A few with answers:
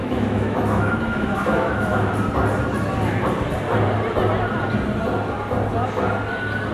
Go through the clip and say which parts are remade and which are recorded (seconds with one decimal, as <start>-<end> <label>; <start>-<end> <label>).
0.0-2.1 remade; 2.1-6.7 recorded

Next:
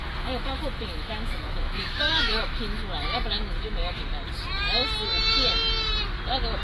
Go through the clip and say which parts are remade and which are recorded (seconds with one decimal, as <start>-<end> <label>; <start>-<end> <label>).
0.0-4.0 remade; 4.0-6.6 recorded

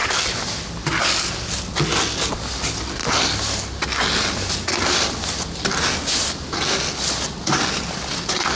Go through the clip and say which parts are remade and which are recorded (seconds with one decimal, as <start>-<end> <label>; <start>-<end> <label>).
0.0-8.6 recorded

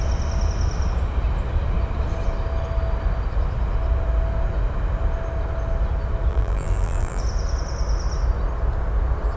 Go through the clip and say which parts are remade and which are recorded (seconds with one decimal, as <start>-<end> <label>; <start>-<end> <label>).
0.0-6.3 recorded; 6.3-7.2 remade; 7.2-9.4 recorded

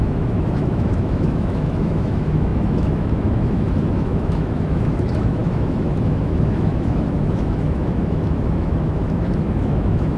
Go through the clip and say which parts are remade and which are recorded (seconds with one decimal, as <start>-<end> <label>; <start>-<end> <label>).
0.0-10.2 remade

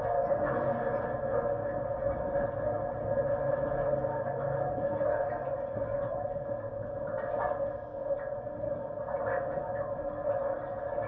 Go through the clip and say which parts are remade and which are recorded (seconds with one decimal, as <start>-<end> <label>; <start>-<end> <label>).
0.0-11.1 recorded